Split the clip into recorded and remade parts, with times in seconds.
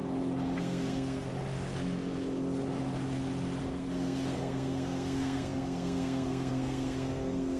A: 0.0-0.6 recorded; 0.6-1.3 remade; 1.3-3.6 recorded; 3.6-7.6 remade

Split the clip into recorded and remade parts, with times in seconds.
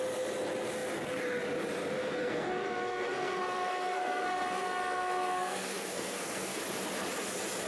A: 0.0-2.0 recorded; 2.0-6.6 remade; 6.6-7.7 recorded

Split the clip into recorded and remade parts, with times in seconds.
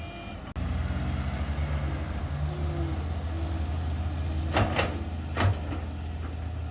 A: 0.0-6.7 recorded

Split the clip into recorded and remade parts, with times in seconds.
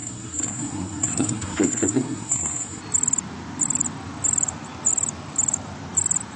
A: 0.0-2.8 remade; 2.8-6.4 recorded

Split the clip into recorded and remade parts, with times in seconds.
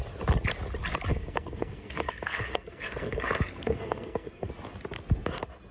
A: 0.0-1.1 recorded; 1.1-4.5 remade; 4.5-5.7 recorded